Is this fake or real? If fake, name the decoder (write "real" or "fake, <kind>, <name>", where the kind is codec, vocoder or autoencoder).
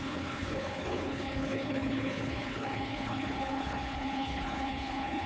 fake, codec, HILCodec